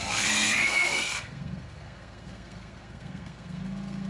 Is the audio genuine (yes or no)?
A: no